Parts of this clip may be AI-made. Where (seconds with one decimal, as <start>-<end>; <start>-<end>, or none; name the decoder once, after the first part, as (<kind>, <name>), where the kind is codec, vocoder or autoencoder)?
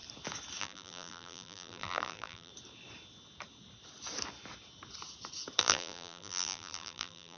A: 0.6-2.5 (vocoder, BigVGAN v2); 5.6-7.4